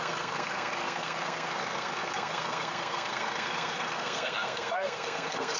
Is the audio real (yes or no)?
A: no